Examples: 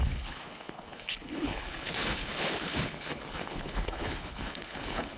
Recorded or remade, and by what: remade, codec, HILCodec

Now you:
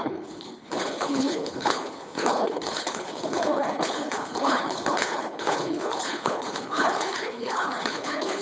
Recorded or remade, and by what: remade, codec, HILCodec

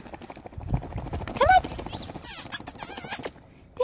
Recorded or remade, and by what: recorded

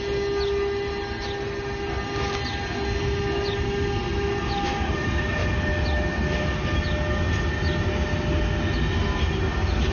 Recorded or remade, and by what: recorded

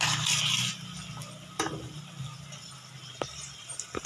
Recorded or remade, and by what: recorded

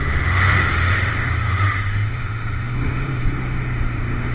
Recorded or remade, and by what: remade, autoencoder, DAC-VAE